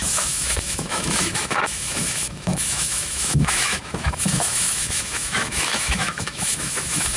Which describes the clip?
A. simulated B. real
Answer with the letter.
A